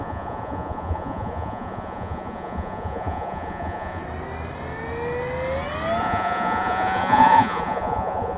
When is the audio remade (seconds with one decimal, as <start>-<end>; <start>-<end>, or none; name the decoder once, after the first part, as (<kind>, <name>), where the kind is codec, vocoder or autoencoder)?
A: 0.0-4.0 (vocoder, Vocos); 6.0-8.4

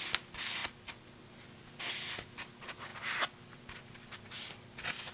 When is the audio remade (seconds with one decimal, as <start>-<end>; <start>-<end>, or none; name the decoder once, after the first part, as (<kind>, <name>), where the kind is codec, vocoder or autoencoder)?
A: none

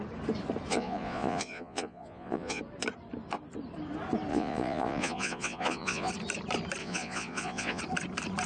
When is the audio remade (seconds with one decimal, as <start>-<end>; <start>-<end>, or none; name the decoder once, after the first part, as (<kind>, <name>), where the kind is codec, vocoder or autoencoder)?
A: 0.7-2.6 (vocoder, Vocos); 4.3-6.1; 6.8-7.8

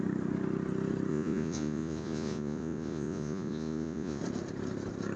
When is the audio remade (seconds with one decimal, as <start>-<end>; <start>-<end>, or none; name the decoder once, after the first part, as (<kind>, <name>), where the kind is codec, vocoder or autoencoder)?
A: 1.1-4.2 (vocoder, Vocos)

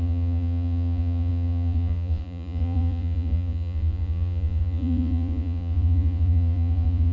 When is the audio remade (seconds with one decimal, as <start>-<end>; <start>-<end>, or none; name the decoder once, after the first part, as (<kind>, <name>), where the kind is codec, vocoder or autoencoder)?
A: 0.0-7.1 (vocoder, Vocos)